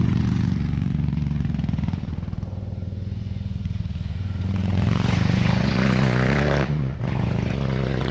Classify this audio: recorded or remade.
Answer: remade